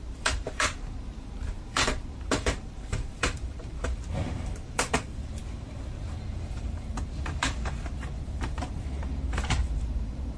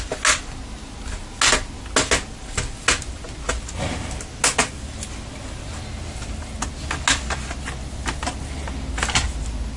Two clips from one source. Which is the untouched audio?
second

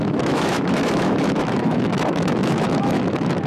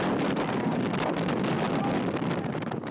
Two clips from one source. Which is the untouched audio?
second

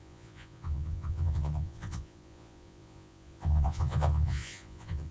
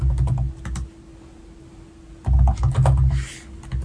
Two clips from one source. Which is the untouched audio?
second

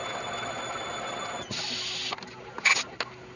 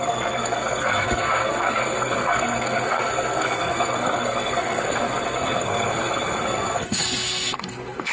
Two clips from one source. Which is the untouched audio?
first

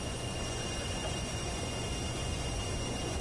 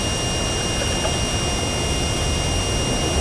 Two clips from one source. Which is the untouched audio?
second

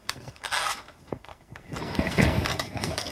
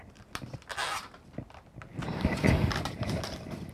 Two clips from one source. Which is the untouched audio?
second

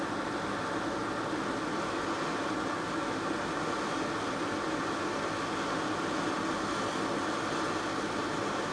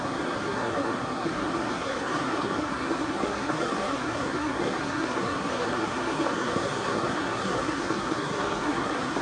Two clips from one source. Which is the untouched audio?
first